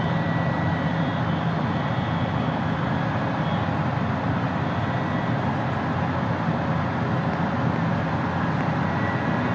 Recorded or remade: recorded